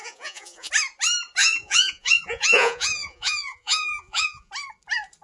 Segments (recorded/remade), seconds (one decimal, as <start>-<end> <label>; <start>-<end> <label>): 0.0-0.7 remade; 0.7-1.4 recorded; 1.4-4.5 remade; 4.5-5.2 recorded